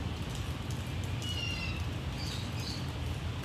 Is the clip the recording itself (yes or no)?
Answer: yes